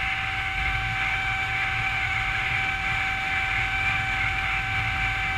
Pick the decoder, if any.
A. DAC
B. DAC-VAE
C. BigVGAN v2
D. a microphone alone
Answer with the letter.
B